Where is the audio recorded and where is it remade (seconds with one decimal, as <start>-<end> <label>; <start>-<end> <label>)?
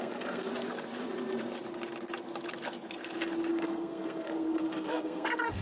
0.0-0.5 remade; 0.5-3.5 recorded; 3.5-5.6 remade